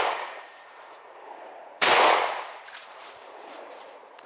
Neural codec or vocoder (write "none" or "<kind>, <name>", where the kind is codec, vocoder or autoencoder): vocoder, Vocos